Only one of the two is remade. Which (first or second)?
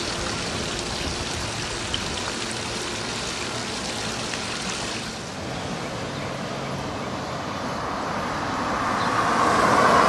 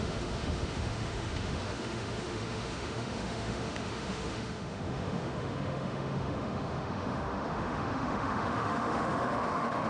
second